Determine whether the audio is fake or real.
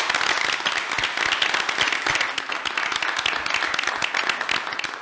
real